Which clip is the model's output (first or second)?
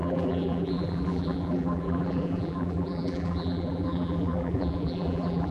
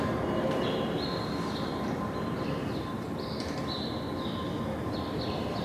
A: first